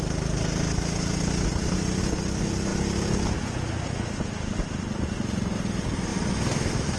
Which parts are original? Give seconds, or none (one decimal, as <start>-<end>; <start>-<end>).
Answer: 0.0-1.5; 2.0-6.1